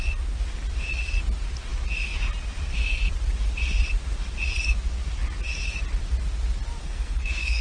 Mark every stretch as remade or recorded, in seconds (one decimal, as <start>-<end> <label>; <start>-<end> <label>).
0.0-6.8 recorded; 6.8-7.6 remade